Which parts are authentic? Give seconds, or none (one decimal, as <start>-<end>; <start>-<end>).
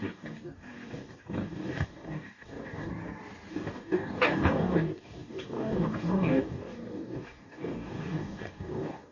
2.9-3.5